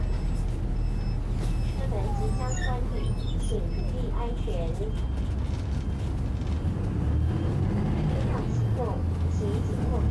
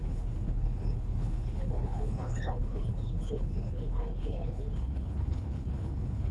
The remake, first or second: second